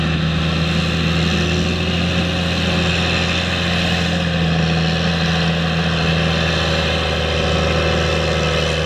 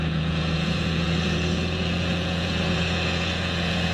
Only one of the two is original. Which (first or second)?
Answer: first